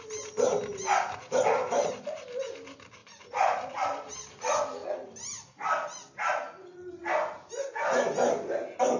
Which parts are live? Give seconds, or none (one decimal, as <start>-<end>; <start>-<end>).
0.0-9.0